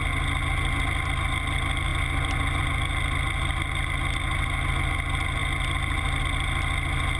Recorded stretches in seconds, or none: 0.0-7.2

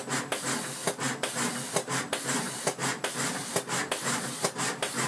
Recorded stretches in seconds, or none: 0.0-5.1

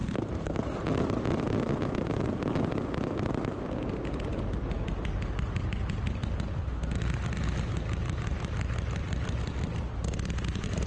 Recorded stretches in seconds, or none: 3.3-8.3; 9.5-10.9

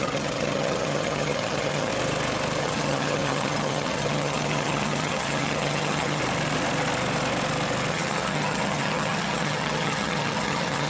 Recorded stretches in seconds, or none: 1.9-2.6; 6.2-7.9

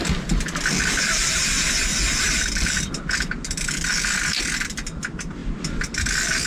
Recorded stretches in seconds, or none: 0.0-1.9; 2.7-6.5

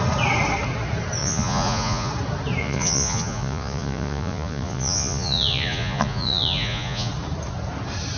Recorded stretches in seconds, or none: 0.0-1.2; 2.1-2.6; 7.1-8.2

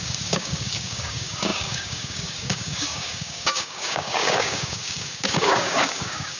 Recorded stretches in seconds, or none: none

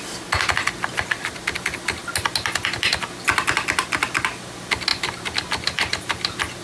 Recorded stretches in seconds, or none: 0.0-6.6